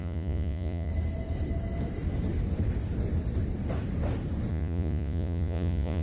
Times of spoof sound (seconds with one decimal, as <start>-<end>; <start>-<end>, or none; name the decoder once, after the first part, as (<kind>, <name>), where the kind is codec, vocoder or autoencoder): 0.0-0.9 (vocoder, Vocos); 4.5-6.0